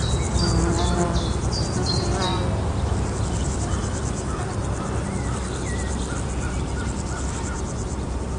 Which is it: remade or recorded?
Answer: recorded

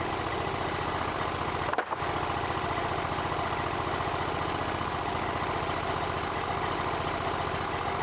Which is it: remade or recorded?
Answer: recorded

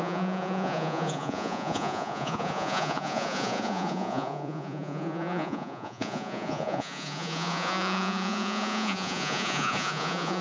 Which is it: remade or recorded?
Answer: remade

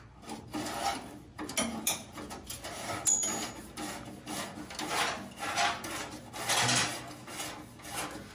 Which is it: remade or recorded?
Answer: recorded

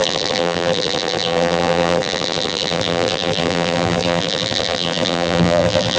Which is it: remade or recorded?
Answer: remade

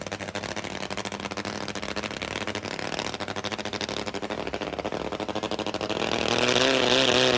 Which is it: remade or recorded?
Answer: recorded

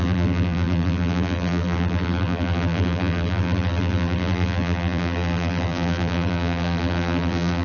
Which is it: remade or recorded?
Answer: remade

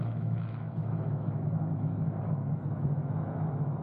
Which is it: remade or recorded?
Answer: remade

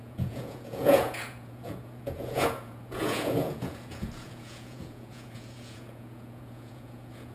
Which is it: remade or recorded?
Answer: remade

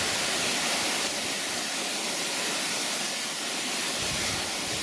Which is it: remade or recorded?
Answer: recorded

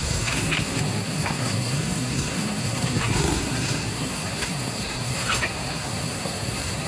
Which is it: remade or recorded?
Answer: remade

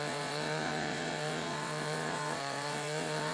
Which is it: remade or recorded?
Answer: remade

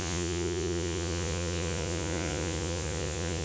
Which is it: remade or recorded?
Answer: remade